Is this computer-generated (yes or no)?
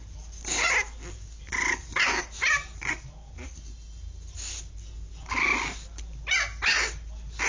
no